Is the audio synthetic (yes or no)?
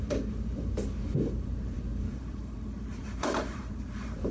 yes